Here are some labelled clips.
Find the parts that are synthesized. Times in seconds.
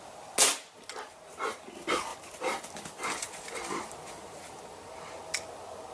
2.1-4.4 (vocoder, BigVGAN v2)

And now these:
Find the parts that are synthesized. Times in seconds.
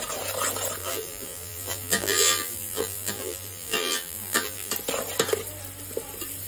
0.8-4.7 (vocoder, BigVGAN v2)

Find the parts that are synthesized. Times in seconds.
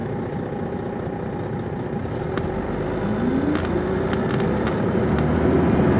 none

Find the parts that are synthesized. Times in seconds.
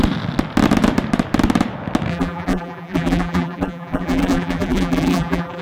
2.1-5.6 (vocoder, BigVGAN v2)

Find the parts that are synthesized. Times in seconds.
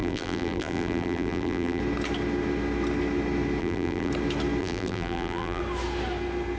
0.0-1.8 (vocoder, BigVGAN v2); 3.6-4.1; 4.6-5.6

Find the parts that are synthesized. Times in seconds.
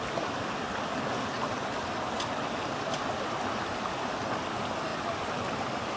4.9-5.5 (vocoder, BigVGAN v2)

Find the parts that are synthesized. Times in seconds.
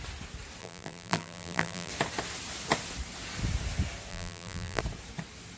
0.6-1.9 (vocoder, BigVGAN v2); 4.1-4.8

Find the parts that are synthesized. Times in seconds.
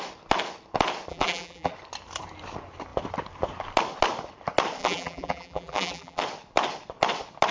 1.1-1.7 (vocoder, BigVGAN v2); 4.8-6.2